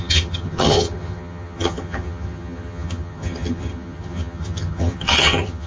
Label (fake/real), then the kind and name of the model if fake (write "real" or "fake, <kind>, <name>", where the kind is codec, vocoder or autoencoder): fake, vocoder, HiFi-GAN